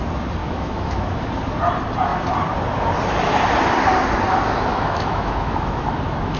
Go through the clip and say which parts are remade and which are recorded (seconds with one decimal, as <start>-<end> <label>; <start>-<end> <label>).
0.0-0.4 recorded; 0.4-1.3 remade; 1.3-4.7 recorded; 4.7-6.4 remade